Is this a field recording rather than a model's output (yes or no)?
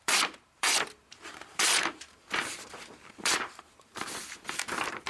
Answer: no